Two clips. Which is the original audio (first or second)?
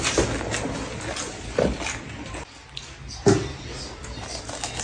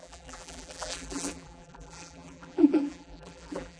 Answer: first